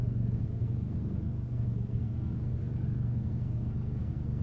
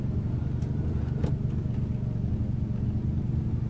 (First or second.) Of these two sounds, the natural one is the second